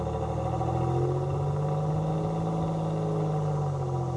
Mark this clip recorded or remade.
recorded